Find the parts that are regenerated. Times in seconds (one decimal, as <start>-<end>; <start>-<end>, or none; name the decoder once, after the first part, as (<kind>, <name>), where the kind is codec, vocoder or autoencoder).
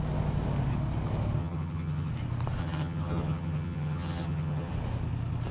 1.4-2.1 (vocoder, HiFi-GAN); 2.6-4.7